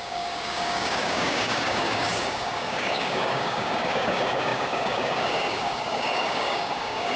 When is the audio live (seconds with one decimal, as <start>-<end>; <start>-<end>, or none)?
none